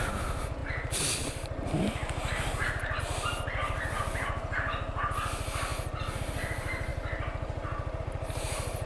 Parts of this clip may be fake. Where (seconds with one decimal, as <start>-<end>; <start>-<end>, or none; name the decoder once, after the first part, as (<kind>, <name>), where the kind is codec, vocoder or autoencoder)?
none